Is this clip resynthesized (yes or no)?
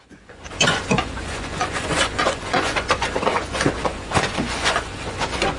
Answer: yes